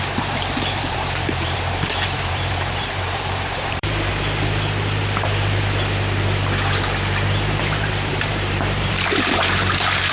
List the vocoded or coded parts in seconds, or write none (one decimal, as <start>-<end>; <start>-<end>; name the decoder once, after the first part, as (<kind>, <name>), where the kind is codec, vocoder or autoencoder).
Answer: 0.0-4.1 (vocoder, BigVGAN v2); 7.6-10.1